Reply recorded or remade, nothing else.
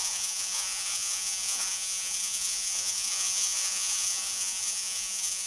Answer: remade